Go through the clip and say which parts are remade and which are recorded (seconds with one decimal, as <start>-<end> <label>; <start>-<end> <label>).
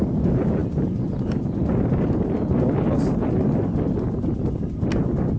0.0-5.4 recorded